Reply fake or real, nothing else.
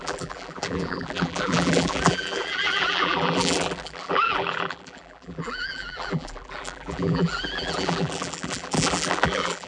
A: fake